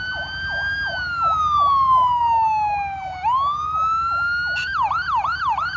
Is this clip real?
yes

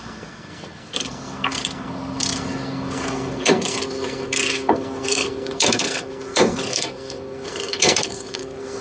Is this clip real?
no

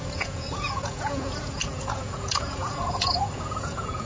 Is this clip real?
no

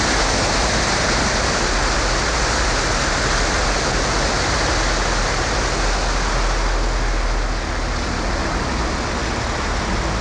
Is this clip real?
yes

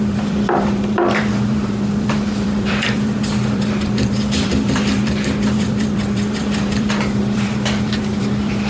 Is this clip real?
no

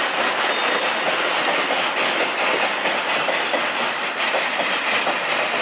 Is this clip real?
yes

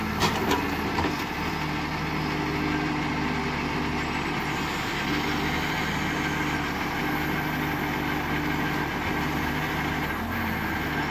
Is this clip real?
yes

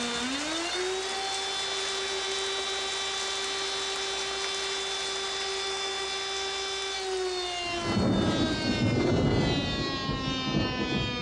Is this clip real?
yes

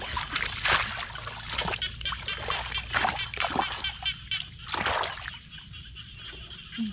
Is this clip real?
yes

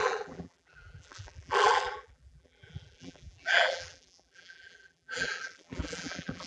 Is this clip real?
no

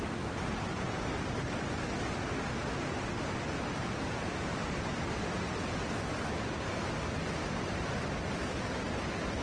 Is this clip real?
yes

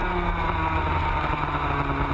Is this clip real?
yes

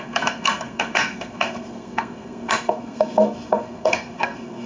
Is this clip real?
no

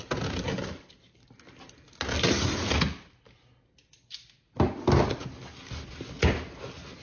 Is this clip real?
yes